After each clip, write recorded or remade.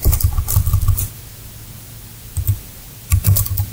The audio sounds recorded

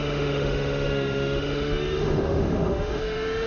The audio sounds remade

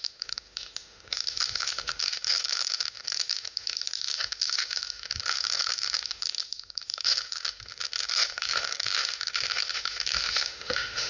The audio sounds remade